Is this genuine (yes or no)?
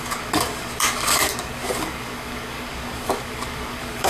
no